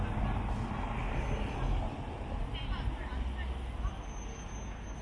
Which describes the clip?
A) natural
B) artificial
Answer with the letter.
A